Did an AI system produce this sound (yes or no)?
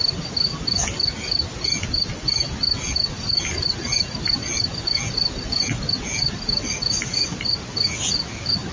no